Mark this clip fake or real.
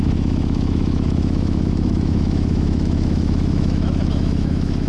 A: fake